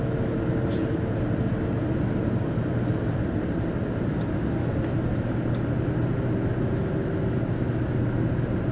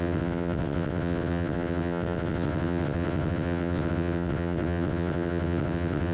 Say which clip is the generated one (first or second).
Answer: second